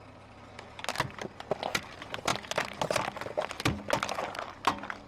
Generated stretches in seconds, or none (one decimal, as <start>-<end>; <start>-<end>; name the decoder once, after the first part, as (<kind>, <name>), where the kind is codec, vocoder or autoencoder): none